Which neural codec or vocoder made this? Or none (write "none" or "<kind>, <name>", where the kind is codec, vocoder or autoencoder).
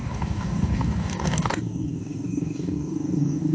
codec, DAC